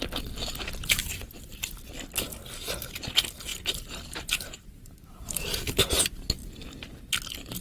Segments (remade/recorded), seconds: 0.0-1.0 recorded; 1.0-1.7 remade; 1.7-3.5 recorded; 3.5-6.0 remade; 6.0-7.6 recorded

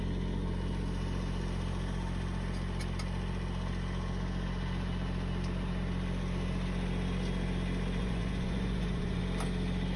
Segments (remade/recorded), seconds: 0.0-8.0 recorded; 8.0-9.2 remade; 9.2-10.0 recorded

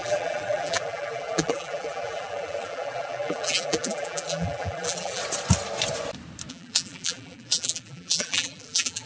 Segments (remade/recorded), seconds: 0.0-5.2 remade; 5.2-6.5 recorded; 6.5-9.1 remade

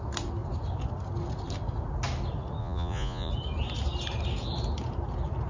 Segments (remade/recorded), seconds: 0.0-2.6 recorded; 2.6-3.3 remade; 3.3-5.5 recorded